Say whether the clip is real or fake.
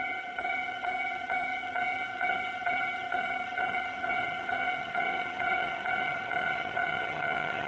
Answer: fake